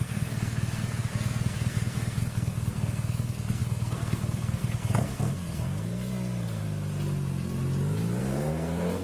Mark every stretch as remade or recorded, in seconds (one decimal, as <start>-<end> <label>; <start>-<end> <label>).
0.0-6.6 remade; 6.6-8.2 recorded; 8.2-9.0 remade